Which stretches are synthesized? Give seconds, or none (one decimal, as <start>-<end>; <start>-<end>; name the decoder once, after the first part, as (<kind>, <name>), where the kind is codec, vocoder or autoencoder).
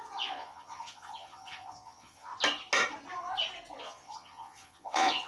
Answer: 0.0-2.3 (vocoder, Vocos); 3.8-5.3